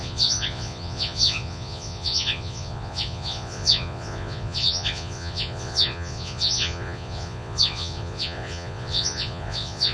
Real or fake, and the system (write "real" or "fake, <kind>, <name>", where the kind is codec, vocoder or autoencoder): fake, vocoder, Vocos